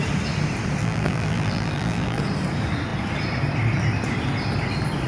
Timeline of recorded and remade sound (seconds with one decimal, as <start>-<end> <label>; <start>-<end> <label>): 0.0-0.8 recorded; 0.8-2.2 remade; 2.2-5.1 recorded